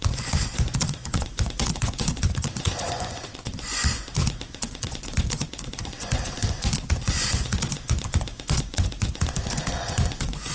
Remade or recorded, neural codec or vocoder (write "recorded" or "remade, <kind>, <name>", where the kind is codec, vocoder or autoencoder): remade, vocoder, Vocos